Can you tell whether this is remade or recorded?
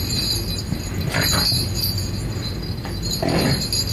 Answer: recorded